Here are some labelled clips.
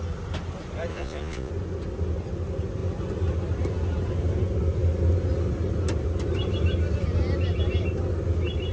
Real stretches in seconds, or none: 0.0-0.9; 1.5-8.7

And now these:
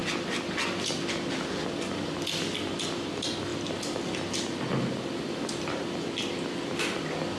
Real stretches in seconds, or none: 0.0-7.4

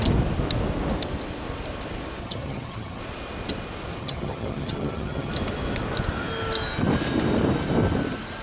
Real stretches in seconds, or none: 0.0-2.2; 3.0-4.0; 5.3-8.4

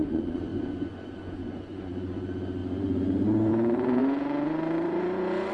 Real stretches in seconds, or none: none

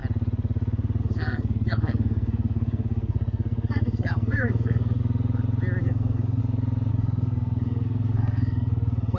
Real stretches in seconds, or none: 0.0-1.0; 5.0-5.8; 6.4-6.9

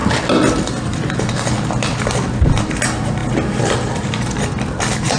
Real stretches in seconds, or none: 0.0-5.2

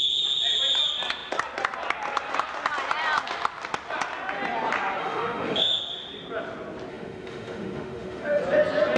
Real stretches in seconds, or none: 0.0-5.0; 5.8-6.9; 8.4-9.0